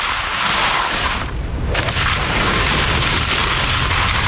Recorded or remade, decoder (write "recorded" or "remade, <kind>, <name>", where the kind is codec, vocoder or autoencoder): recorded